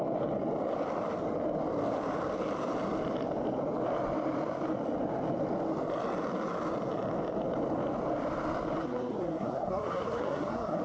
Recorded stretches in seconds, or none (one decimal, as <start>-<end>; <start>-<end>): 0.0-8.8